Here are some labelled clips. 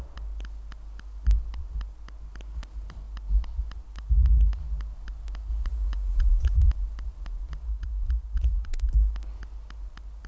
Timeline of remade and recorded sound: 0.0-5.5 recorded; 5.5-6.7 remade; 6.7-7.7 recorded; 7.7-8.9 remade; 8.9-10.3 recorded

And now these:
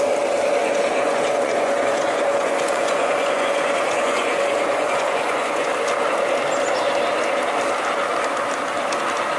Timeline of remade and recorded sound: 0.0-0.6 recorded; 0.6-5.7 remade; 5.7-9.4 recorded

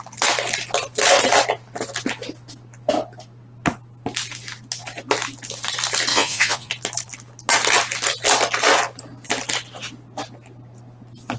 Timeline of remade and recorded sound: 0.0-6.1 recorded; 6.1-6.7 remade; 6.7-11.4 recorded